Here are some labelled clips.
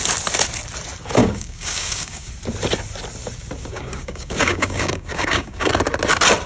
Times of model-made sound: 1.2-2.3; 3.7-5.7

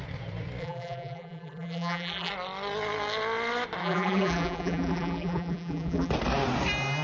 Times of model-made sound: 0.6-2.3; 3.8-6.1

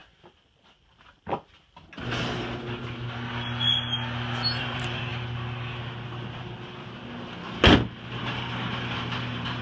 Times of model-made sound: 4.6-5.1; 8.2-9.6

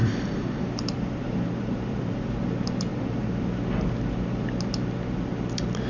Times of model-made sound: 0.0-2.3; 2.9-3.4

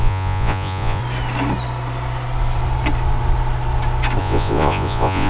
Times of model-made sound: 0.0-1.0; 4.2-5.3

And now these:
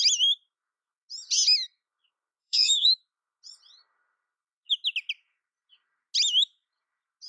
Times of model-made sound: 2.4-3.0